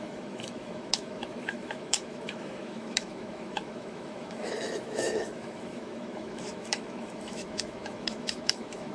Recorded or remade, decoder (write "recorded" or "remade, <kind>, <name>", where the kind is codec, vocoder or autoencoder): remade, autoencoder, DAC-VAE